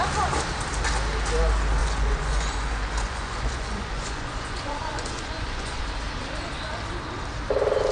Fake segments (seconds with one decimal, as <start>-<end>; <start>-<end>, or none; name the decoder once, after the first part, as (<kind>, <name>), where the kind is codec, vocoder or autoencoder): 1.8-5.8 (vocoder, Vocos)